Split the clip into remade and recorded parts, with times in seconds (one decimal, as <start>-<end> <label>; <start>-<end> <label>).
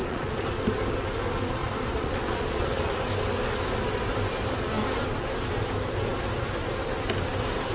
0.0-0.5 remade; 0.5-1.6 recorded; 1.6-2.9 remade; 2.9-7.7 recorded